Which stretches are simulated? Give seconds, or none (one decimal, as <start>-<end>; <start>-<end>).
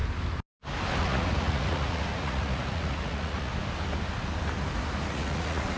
1.0-3.5; 5.1-5.8